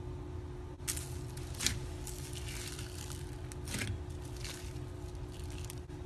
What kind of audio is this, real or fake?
real